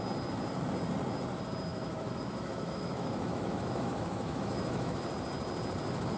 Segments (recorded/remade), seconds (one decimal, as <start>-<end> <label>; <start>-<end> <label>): 0.0-1.7 recorded; 1.7-5.0 remade; 5.0-6.2 recorded